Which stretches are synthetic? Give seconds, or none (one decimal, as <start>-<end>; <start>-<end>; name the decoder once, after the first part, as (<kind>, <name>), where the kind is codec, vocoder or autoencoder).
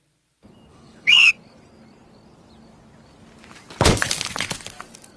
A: 0.7-1.3 (codec, HILCodec)